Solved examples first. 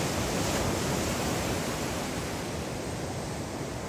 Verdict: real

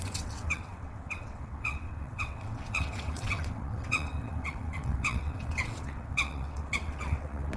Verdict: fake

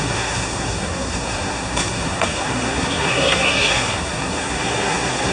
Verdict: fake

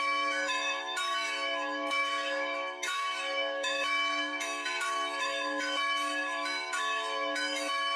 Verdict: fake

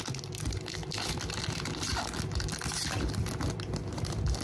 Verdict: real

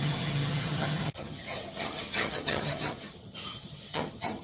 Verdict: fake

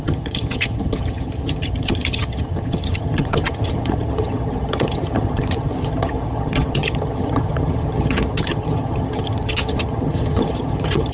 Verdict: fake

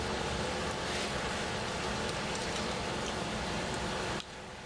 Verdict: real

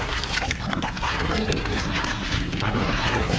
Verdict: fake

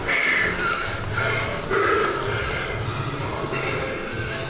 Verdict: real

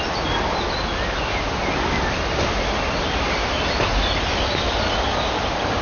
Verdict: real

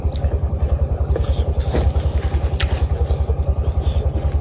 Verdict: real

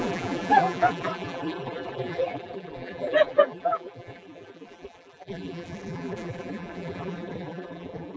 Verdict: fake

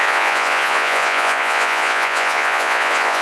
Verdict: fake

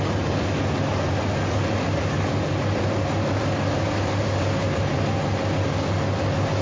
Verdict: real